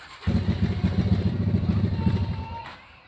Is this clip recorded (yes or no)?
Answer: yes